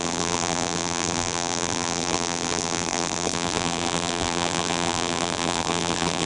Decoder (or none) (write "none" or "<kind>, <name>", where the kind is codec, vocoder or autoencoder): vocoder, BigVGAN v2